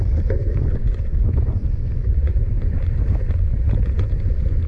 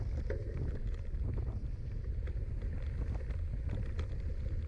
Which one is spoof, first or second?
first